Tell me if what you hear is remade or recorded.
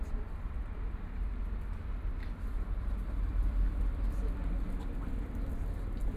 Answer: remade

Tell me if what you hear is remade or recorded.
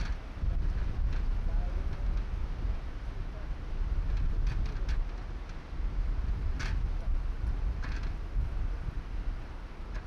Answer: recorded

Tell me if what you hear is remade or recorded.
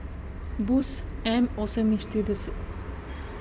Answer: remade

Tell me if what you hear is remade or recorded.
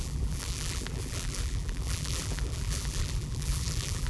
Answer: remade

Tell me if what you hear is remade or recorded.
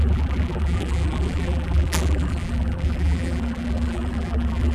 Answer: remade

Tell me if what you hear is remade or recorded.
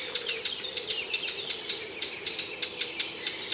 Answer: remade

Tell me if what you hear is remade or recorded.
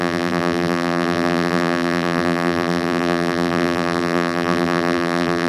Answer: remade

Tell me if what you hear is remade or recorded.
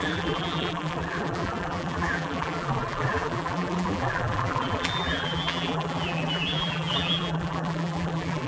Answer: remade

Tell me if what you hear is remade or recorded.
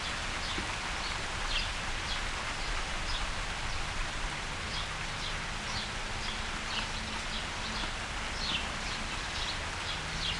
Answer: recorded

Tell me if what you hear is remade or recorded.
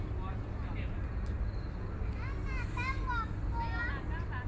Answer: recorded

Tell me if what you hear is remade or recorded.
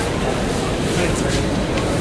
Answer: remade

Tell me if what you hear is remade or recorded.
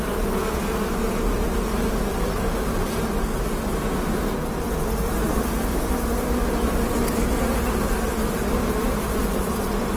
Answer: recorded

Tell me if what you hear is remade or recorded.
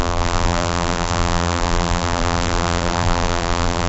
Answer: remade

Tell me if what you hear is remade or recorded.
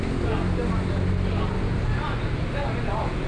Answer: recorded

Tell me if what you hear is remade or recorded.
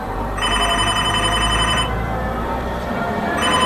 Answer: remade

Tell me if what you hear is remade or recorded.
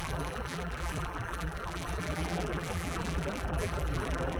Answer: remade